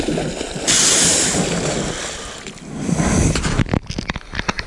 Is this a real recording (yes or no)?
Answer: yes